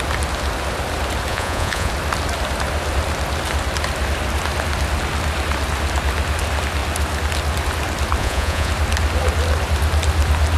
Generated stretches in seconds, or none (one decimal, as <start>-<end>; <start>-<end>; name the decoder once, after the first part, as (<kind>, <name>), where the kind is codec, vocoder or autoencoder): 1.3-1.9 (vocoder, Vocos); 8.2-8.7